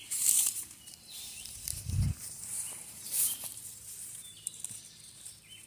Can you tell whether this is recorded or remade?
remade